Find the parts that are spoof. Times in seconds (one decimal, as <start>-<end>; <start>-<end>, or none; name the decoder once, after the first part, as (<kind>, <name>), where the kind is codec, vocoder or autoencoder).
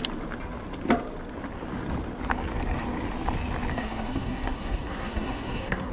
3.7-5.9 (codec, SNAC)